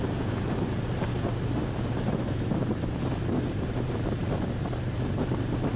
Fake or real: fake